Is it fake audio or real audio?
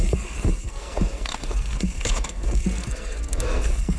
fake